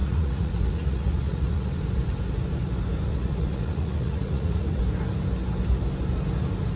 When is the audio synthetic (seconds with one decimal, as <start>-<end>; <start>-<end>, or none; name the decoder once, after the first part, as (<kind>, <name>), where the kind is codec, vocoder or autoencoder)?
0.0-1.7 (vocoder, Vocos); 3.1-4.8

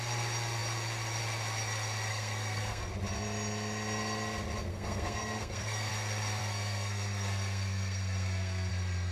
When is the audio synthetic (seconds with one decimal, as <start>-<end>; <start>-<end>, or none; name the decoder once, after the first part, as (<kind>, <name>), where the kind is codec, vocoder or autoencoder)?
2.1-2.9 (codec, SNAC); 4.7-5.9; 6.4-8.7

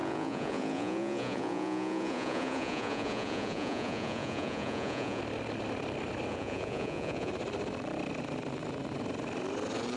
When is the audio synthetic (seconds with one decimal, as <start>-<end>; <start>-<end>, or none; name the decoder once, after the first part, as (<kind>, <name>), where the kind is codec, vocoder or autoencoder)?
0.0-5.2 (vocoder, Vocos); 6.3-7.3